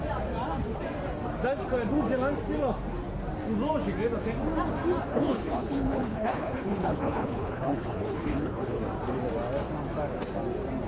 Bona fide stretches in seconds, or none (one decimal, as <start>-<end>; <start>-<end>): 0.0-5.1; 8.8-10.9